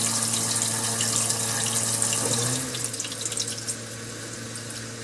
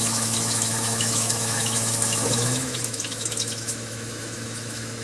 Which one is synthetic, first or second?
second